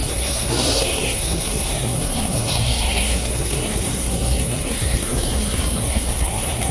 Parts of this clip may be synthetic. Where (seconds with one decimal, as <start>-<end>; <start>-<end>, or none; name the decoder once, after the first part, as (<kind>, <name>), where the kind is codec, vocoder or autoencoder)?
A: 0.0-6.7 (codec, SNAC)